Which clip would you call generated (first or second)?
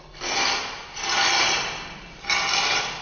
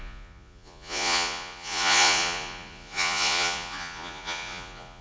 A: second